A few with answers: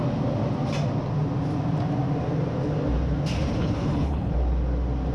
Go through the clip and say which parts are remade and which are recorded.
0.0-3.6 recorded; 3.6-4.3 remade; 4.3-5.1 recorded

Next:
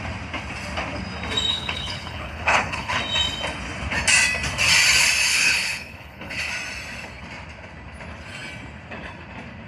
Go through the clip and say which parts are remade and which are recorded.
0.0-1.5 recorded; 1.5-3.0 remade; 3.0-5.3 recorded; 5.3-6.5 remade; 6.5-9.7 recorded

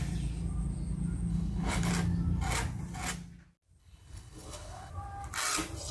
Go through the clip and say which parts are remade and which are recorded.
0.0-1.3 recorded; 1.3-1.9 remade; 1.9-3.8 recorded; 3.8-4.9 remade; 4.9-5.9 recorded

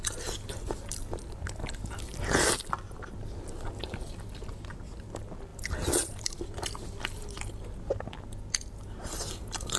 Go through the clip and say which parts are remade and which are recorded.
0.0-9.8 recorded

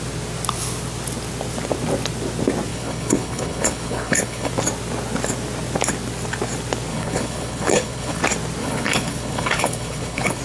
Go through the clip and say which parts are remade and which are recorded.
0.0-2.7 recorded; 2.7-4.5 remade; 4.5-6.9 recorded; 6.9-8.2 remade; 8.2-8.6 recorded; 8.6-10.4 remade